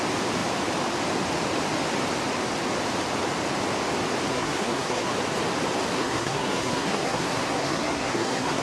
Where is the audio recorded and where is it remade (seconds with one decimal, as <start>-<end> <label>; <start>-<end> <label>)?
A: 0.0-4.3 recorded; 4.3-5.1 remade; 5.1-5.9 recorded; 5.9-8.6 remade